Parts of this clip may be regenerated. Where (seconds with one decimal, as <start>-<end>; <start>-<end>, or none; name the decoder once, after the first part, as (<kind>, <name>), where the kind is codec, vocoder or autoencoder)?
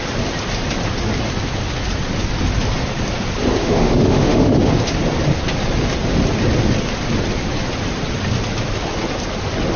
3.6-4.7 (autoencoder, DAC-VAE)